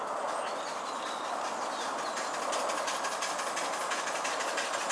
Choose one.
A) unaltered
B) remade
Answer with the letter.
A